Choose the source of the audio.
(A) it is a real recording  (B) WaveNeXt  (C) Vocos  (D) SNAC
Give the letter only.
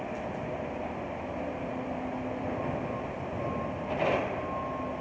A